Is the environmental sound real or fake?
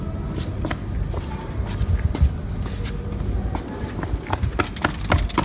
real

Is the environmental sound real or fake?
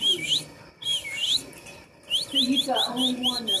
real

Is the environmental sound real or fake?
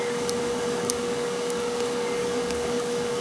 fake